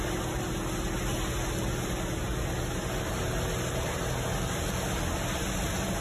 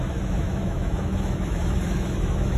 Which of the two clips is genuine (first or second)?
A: first